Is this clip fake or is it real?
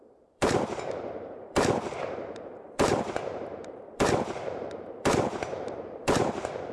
fake